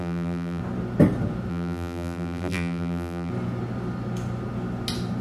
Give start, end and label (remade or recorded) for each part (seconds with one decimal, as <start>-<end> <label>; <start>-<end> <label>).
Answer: 0.0-0.6 remade; 0.6-1.5 recorded; 1.5-3.3 remade; 3.3-5.2 recorded